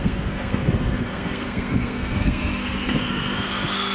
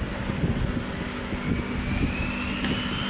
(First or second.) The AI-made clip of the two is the first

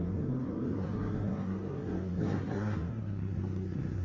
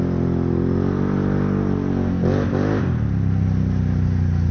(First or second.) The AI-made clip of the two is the first